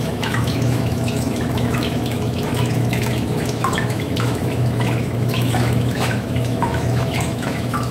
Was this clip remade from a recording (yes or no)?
yes